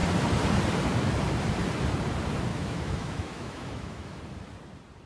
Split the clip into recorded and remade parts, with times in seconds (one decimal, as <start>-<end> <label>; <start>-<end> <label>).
0.0-2.5 recorded; 2.5-4.2 remade; 4.2-5.1 recorded